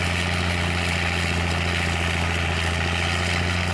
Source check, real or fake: real